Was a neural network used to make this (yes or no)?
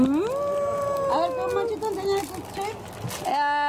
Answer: no